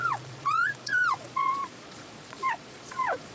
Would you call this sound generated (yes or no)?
yes